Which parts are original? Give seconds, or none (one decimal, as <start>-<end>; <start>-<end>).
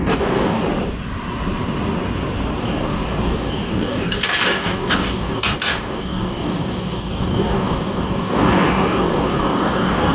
0.6-2.6